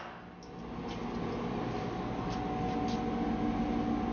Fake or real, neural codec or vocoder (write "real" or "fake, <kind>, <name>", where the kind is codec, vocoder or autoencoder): real